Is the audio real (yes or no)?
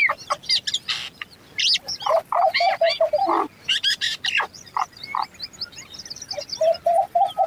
yes